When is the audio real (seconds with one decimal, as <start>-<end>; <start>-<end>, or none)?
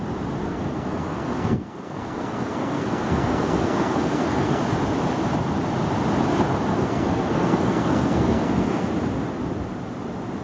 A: 0.0-0.4; 4.6-6.7; 8.9-10.4